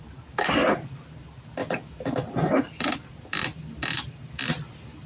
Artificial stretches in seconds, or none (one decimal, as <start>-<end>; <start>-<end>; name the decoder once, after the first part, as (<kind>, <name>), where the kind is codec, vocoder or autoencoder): none